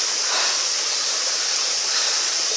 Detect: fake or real real